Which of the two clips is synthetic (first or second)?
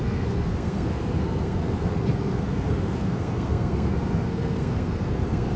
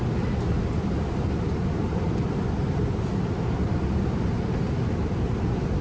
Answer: first